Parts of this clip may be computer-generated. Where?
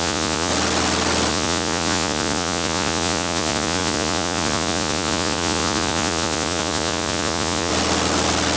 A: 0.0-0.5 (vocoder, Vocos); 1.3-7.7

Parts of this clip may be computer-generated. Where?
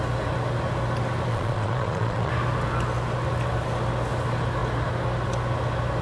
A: 1.3-2.3 (vocoder, Vocos)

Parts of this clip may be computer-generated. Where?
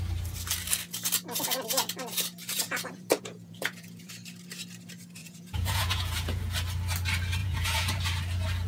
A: 2.4-4.1 (vocoder, Vocos); 5.2-6.4; 7.4-8.0